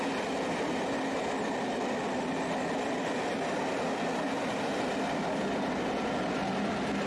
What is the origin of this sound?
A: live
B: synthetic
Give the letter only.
A